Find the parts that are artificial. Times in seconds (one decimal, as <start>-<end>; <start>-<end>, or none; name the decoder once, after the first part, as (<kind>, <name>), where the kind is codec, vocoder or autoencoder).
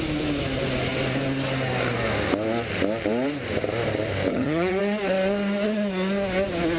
4.3-4.8 (vocoder, HiFi-GAN)